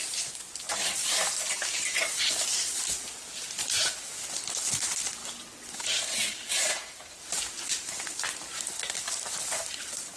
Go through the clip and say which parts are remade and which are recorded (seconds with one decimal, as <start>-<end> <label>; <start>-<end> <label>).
0.0-1.0 remade; 1.0-1.5 recorded; 1.5-4.1 remade; 4.1-4.7 recorded; 4.7-5.2 remade; 5.2-5.8 recorded; 5.8-10.2 remade